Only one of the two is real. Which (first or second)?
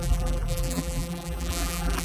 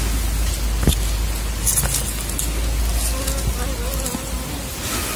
second